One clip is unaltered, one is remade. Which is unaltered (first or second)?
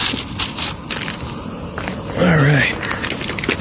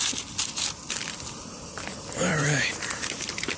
first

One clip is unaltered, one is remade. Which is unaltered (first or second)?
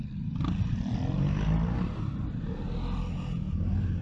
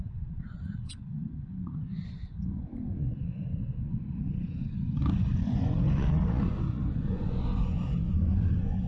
first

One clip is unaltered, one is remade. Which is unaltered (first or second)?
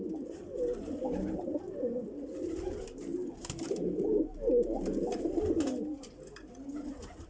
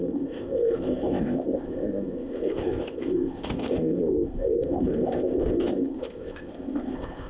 first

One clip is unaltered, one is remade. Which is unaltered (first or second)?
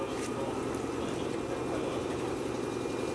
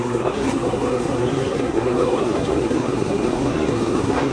first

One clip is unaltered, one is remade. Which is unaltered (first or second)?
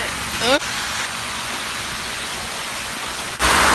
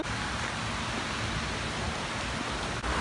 second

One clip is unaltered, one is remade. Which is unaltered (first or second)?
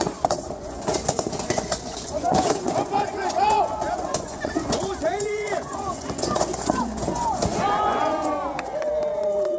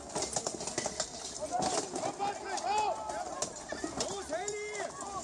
second